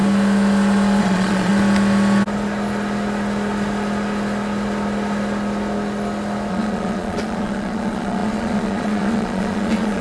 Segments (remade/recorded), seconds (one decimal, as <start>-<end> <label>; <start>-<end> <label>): 0.0-1.0 recorded; 1.0-1.5 remade; 1.5-6.5 recorded; 6.5-10.0 remade